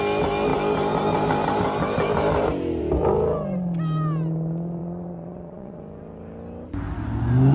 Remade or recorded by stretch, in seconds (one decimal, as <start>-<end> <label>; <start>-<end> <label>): 0.0-4.8 recorded; 4.8-5.8 remade; 5.8-7.5 recorded